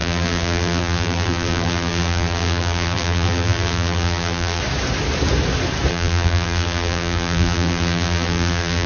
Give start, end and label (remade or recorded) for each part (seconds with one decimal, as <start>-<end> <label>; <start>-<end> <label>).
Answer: 0.0-4.6 remade; 4.6-5.9 recorded; 5.9-8.9 remade